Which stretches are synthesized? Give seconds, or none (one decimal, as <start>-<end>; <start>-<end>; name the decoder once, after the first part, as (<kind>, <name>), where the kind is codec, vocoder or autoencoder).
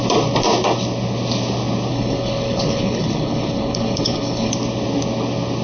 1.9-4.5 (codec, HILCodec)